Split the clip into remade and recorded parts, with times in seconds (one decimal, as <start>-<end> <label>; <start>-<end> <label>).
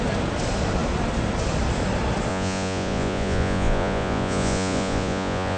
0.0-2.3 recorded; 2.3-5.6 remade